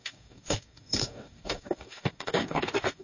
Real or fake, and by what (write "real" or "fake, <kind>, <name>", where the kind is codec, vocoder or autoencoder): fake, codec, DAC